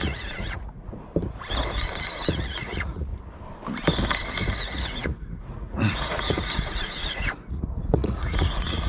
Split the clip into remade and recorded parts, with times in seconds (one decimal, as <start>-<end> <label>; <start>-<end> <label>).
0.0-1.1 remade; 1.1-2.3 recorded; 2.3-3.1 remade; 3.1-4.6 recorded; 4.6-8.9 remade